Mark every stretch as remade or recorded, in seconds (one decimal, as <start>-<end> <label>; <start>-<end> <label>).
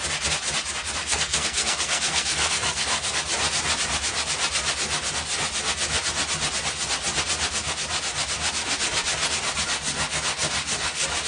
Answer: 0.0-1.0 recorded; 1.0-3.2 remade; 3.2-11.3 recorded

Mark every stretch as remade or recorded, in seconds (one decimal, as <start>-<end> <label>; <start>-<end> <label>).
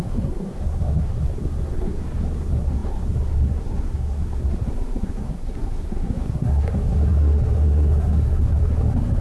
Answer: 0.0-9.2 remade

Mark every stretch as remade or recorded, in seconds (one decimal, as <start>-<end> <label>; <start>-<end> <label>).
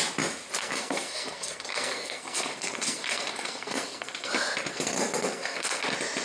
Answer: 0.0-0.6 recorded; 0.6-4.3 remade; 4.3-4.7 recorded; 4.7-5.8 remade; 5.8-6.2 recorded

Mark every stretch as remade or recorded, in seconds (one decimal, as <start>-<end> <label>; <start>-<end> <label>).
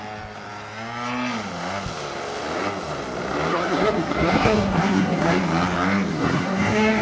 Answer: 0.0-3.5 recorded; 3.5-5.4 remade; 5.4-6.1 recorded; 6.1-7.0 remade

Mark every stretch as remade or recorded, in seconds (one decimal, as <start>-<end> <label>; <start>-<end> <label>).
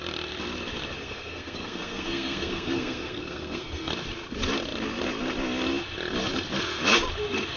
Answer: 0.0-1.0 recorded; 1.0-3.9 remade; 3.9-7.6 recorded